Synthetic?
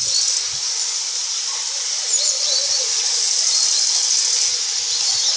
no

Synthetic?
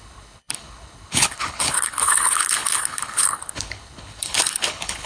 yes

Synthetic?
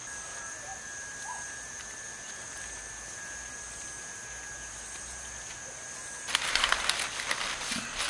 no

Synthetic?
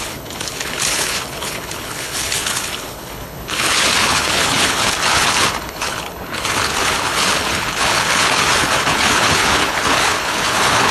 yes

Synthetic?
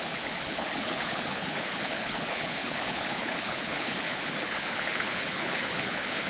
yes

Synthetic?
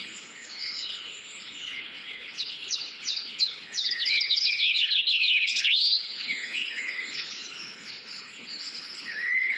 yes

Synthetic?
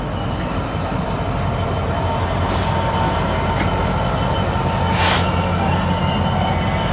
no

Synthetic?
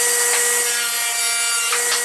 no